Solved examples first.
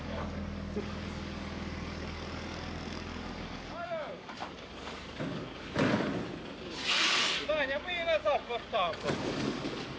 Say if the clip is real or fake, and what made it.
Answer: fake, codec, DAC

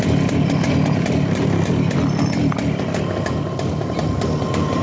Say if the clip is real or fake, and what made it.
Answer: real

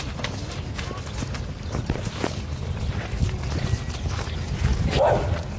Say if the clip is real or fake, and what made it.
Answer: real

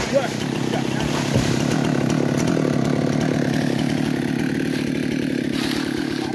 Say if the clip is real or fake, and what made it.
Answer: real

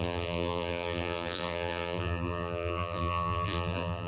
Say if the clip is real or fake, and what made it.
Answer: fake, vocoder, BigVGAN v2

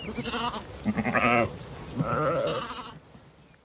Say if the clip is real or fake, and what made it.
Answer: real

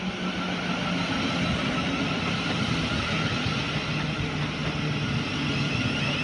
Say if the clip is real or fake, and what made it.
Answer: real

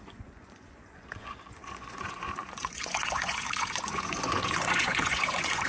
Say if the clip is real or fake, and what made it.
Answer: fake, vocoder, Vocos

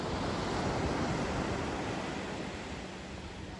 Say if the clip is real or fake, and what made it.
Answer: real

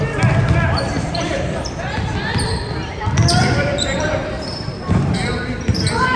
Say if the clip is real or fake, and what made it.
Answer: fake, vocoder, BigVGAN v2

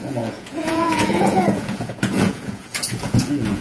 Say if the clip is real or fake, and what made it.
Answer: fake, vocoder, Vocos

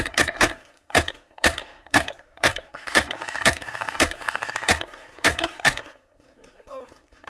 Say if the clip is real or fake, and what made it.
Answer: fake, codec, SNAC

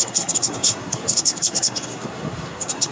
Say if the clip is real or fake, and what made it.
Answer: fake, codec, SNAC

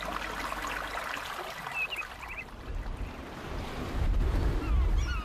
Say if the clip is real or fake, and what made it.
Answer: real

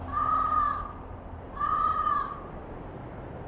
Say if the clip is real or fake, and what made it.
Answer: real